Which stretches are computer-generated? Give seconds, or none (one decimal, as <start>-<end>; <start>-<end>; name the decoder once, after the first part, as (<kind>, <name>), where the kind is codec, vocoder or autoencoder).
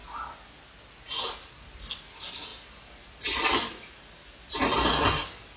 none